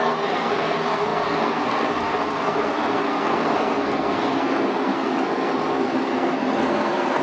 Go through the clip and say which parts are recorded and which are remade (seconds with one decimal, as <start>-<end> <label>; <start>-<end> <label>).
0.0-7.2 remade